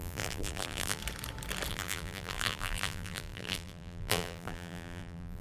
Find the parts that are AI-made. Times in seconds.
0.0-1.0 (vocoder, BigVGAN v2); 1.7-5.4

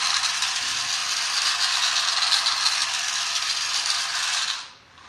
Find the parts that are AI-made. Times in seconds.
none

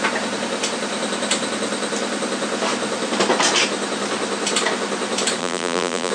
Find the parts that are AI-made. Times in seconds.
5.4-6.1 (vocoder, BigVGAN v2)

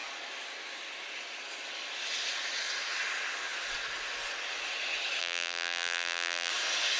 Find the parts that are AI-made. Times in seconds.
5.2-6.5 (vocoder, BigVGAN v2)